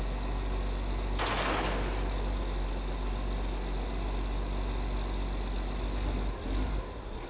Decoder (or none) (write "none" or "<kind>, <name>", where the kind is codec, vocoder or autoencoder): none